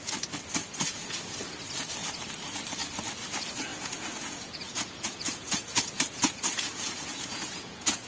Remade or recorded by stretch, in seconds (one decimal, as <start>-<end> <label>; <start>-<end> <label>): 0.0-0.6 recorded; 0.6-1.2 remade; 1.2-3.7 recorded; 3.7-8.1 remade